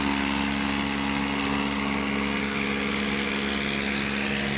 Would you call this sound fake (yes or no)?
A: no